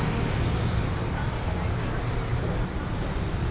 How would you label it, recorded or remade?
recorded